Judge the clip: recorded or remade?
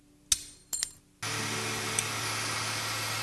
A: recorded